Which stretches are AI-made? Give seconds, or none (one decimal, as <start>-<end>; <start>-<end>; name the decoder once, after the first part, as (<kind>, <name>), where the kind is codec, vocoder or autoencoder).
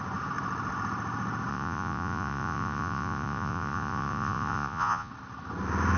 1.5-5.1 (vocoder, Vocos)